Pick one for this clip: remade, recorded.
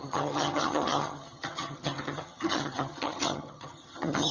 remade